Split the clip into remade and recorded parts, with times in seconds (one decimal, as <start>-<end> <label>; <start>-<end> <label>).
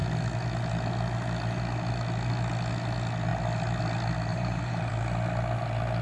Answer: 0.0-4.3 recorded; 4.3-4.9 remade; 4.9-6.0 recorded